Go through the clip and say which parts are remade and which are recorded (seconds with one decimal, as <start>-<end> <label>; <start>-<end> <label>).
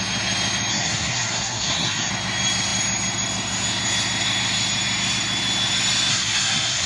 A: 0.0-0.7 recorded; 0.7-2.1 remade; 2.1-6.1 recorded; 6.1-6.9 remade